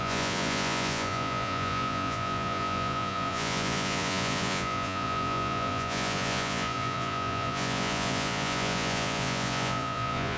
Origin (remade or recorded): remade